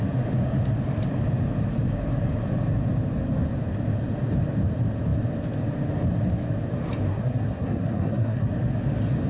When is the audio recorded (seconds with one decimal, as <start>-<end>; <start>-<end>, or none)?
0.0-7.1; 8.5-9.3